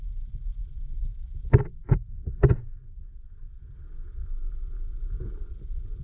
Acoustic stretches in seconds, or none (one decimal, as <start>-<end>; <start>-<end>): 0.0-6.0